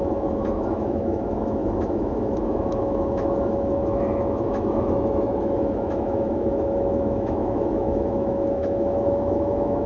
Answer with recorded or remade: remade